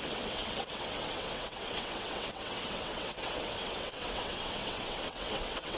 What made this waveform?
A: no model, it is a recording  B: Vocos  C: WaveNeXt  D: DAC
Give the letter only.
C